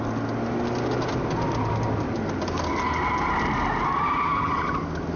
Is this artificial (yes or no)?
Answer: no